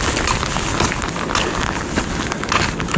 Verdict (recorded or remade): recorded